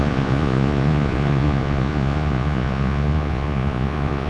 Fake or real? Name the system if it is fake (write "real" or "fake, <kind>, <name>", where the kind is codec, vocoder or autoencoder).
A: fake, vocoder, Vocos